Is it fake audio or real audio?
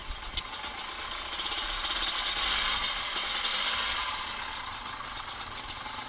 real